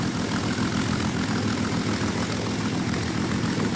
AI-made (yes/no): no